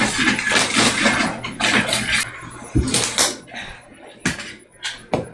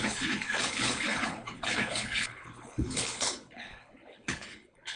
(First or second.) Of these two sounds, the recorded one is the first